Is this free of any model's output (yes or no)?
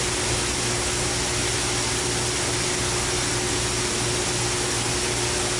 yes